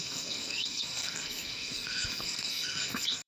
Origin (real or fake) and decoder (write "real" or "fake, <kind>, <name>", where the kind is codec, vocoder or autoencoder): fake, codec, SNAC